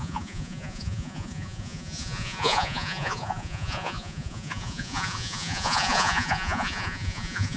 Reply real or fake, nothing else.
fake